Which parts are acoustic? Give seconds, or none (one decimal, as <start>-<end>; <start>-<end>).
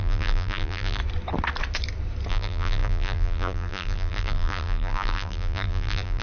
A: 1.0-2.3